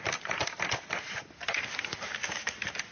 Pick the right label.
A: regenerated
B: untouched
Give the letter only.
B